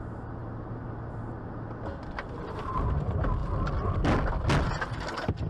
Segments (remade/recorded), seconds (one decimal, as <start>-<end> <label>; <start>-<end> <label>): 0.0-5.5 recorded